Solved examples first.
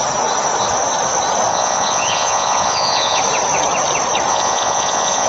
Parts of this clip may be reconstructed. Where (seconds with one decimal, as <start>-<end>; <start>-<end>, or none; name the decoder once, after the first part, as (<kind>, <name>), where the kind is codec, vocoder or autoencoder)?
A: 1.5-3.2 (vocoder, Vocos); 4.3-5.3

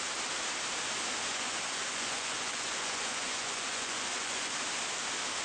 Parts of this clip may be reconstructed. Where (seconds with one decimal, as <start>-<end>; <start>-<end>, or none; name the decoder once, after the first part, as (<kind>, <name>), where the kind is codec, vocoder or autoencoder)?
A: 1.3-4.5 (vocoder, Vocos)

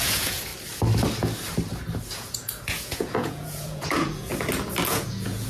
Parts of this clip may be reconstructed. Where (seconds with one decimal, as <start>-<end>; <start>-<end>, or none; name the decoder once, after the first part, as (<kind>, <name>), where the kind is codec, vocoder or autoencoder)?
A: 0.0-0.5 (vocoder, Vocos); 2.1-4.3; 4.9-5.5